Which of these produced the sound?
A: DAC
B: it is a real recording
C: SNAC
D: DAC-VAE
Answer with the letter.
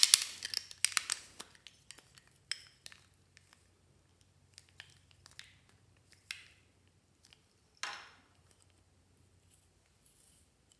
B